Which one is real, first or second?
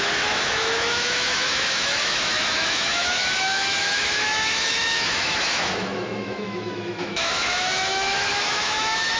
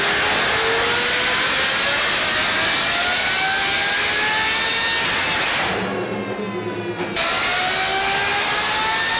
second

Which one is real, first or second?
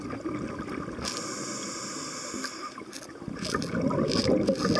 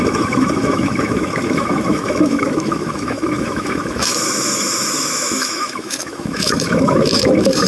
first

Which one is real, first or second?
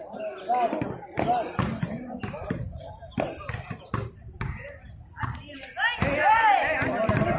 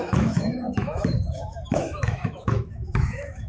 first